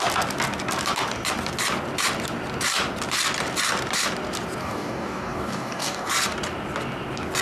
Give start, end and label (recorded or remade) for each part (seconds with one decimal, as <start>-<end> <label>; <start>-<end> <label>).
0.0-4.6 recorded; 4.6-6.1 remade; 6.1-7.4 recorded